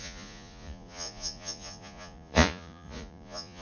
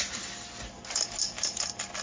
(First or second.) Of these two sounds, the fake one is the first